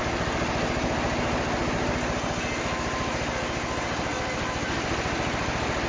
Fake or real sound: real